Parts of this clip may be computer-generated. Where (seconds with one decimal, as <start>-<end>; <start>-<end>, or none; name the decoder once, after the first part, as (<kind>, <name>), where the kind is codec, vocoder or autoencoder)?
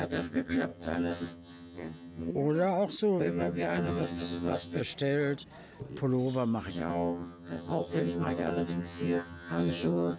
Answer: 0.0-2.3 (vocoder, HiFi-GAN); 3.2-4.8; 6.7-10.2